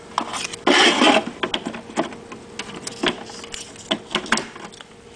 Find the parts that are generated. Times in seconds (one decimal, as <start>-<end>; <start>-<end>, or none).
none